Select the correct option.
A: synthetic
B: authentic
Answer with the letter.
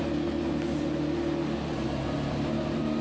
B